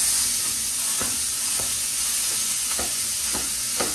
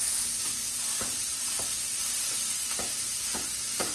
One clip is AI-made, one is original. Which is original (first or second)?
second